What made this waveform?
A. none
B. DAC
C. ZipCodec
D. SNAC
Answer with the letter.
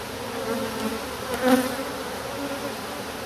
A